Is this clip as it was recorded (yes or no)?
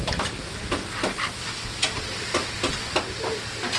yes